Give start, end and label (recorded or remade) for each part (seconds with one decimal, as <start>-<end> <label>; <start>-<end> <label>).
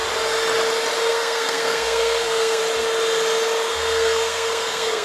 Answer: 0.0-1.1 recorded; 1.1-2.6 remade; 2.6-3.7 recorded; 3.7-5.0 remade